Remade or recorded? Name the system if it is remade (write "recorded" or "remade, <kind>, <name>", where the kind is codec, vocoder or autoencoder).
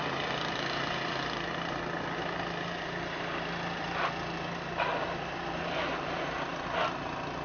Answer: recorded